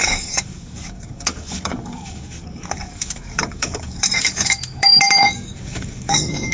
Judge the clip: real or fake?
fake